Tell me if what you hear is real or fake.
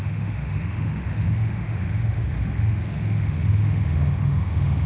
fake